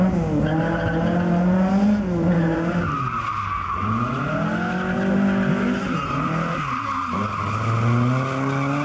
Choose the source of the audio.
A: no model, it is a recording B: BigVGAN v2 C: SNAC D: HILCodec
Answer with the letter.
A